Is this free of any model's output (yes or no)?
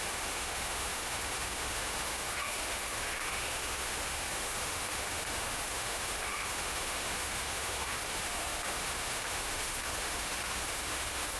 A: no